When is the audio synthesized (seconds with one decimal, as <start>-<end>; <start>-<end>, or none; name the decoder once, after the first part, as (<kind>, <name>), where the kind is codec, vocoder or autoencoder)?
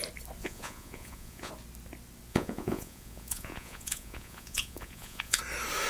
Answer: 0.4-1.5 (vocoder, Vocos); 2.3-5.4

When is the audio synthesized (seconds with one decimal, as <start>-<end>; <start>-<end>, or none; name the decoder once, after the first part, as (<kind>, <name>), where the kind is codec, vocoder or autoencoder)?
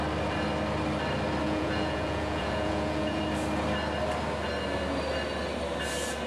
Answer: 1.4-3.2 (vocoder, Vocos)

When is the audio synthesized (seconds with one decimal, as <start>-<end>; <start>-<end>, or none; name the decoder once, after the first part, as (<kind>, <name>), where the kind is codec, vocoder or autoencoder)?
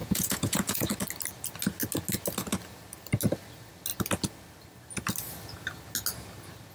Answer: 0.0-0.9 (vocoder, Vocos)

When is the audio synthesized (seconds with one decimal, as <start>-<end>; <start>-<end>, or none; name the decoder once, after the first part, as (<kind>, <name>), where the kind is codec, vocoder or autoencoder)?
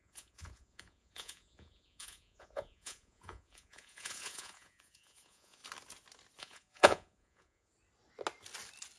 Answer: 0.0-5.6 (vocoder, Vocos); 6.4-7.7